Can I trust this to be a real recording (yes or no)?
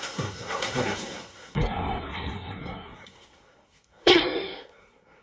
no